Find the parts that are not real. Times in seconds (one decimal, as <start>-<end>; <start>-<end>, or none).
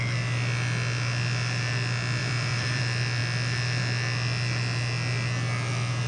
2.2-2.8